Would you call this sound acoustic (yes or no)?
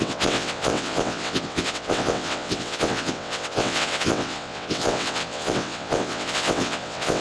no